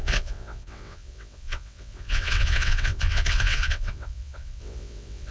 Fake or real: fake